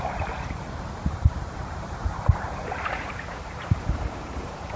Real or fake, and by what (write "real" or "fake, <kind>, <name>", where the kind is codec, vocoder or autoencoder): fake, vocoder, BigVGAN v2